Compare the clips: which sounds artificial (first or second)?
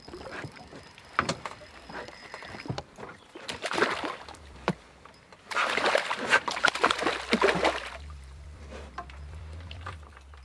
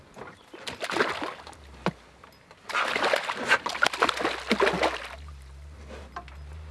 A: first